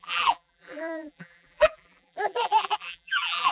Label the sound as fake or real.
fake